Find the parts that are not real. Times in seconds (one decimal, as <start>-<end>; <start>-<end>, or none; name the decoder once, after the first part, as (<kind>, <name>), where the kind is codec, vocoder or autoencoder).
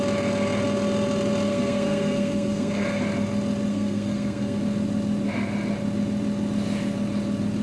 1.5-3.0 (codec, SNAC); 3.7-4.6